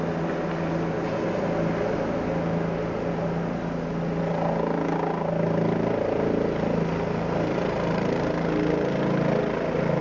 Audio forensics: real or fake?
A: real